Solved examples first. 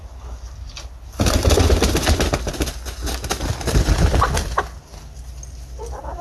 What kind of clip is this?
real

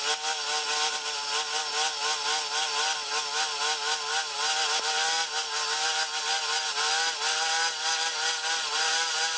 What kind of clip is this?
real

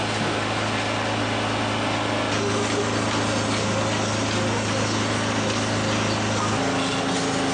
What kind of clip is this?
real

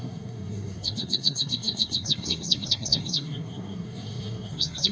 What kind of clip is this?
fake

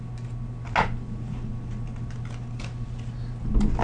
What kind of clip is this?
real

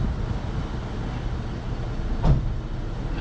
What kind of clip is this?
real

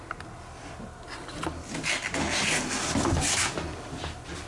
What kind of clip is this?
real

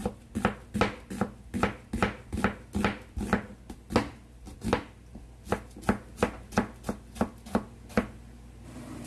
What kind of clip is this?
real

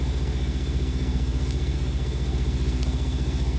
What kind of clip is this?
fake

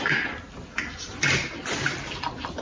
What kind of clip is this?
real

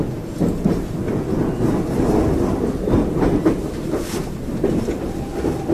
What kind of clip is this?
real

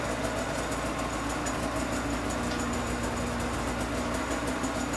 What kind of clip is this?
real